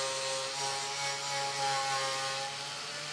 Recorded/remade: recorded